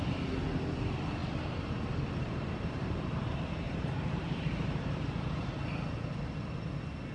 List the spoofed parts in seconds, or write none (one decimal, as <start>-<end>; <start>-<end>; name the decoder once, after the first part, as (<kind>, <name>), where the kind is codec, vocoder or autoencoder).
1.2-5.5 (vocoder, BigVGAN v2)